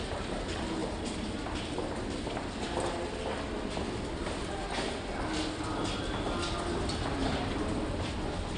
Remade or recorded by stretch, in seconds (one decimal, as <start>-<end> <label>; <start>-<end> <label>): 0.0-8.6 recorded